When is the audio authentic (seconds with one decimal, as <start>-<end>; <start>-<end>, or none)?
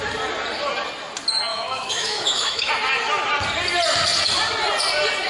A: 0.0-1.5; 2.7-5.3